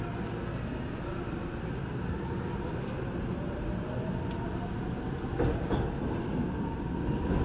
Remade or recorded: recorded